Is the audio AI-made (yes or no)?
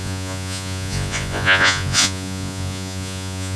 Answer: yes